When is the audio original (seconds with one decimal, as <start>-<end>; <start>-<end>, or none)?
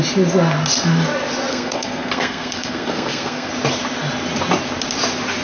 0.0-1.5; 3.5-5.4